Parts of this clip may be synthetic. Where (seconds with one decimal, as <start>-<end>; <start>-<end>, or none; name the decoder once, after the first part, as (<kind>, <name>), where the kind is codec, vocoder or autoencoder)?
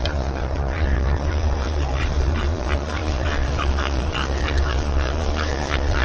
0.0-6.0 (vocoder, Vocos)